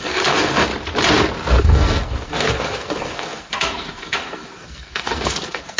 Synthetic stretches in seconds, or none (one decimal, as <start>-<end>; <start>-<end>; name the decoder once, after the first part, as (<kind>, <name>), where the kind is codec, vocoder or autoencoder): 0.0-0.7 (codec, SNAC); 1.6-5.8